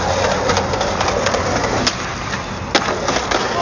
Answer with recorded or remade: recorded